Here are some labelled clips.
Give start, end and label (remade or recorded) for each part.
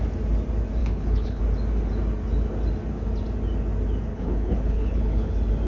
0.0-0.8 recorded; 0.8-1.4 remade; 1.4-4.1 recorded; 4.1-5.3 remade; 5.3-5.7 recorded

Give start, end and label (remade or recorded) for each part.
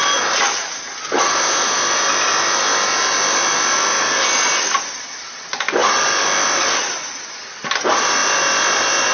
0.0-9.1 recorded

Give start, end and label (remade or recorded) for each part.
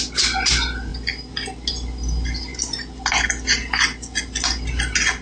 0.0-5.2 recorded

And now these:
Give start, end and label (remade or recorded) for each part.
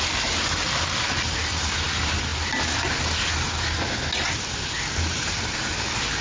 0.0-6.2 recorded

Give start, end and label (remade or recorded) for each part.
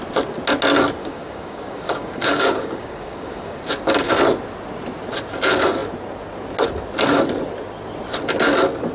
0.0-1.0 recorded; 1.0-3.6 remade; 3.6-8.9 recorded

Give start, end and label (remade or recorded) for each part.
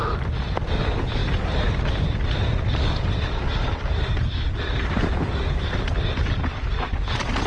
0.0-7.5 recorded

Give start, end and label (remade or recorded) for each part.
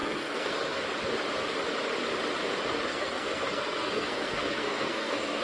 0.0-0.8 remade; 0.8-2.9 recorded; 2.9-5.4 remade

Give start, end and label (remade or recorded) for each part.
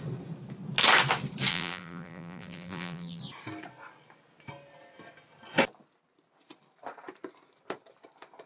0.0-1.5 recorded; 1.5-3.2 remade; 3.2-8.5 recorded